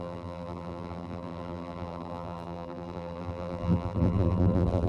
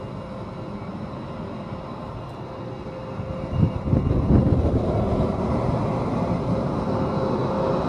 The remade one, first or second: first